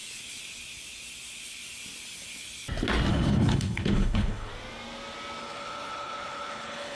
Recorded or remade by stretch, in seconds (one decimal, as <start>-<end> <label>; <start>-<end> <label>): 0.0-3.1 recorded; 3.1-4.5 remade; 4.5-5.4 recorded; 5.4-6.9 remade